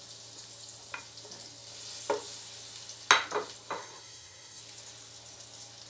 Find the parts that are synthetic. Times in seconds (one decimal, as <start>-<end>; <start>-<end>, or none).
3.8-4.6

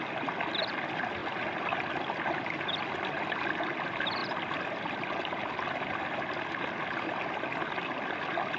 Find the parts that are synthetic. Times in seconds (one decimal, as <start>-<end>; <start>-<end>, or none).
none

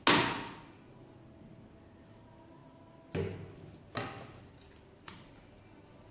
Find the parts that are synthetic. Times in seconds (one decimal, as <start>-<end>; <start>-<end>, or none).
none